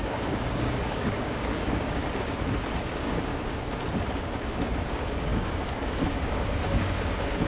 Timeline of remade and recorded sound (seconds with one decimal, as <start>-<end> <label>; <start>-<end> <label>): 0.0-2.0 remade; 2.0-2.8 recorded; 2.8-3.3 remade; 3.3-4.6 recorded; 4.6-7.5 remade